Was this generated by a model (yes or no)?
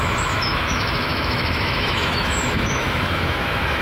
yes